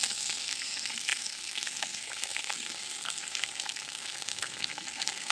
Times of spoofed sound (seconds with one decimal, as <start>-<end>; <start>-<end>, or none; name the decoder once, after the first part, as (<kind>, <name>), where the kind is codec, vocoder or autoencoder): 0.0-5.3 (codec, SNAC)